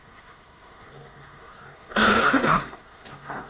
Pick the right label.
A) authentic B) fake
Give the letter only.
B